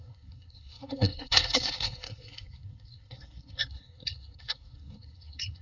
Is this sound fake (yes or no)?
yes